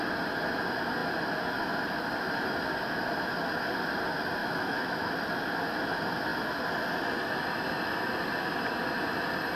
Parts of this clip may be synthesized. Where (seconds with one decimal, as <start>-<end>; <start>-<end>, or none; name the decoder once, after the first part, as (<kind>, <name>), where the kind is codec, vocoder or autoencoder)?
4.4-5.1 (autoencoder, DAC-VAE)